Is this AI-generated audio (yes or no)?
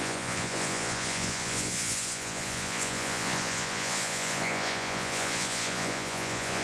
yes